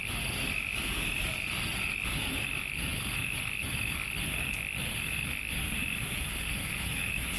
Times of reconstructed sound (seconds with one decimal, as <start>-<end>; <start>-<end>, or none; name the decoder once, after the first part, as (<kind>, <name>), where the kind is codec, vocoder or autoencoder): none